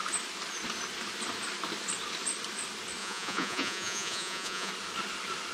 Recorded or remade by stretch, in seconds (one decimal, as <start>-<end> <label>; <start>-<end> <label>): 0.0-3.0 recorded; 3.0-4.7 remade; 4.7-5.5 recorded